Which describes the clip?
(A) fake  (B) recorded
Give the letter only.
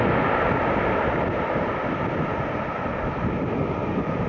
B